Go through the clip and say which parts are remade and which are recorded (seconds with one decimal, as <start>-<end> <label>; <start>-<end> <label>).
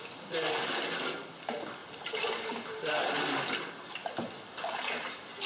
0.0-1.8 recorded; 1.8-2.9 remade; 2.9-5.5 recorded